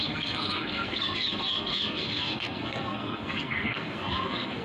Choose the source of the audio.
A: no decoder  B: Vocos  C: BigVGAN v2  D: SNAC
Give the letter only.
D